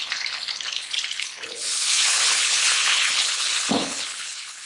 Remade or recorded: remade